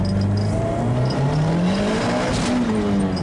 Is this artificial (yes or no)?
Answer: no